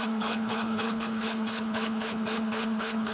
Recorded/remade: remade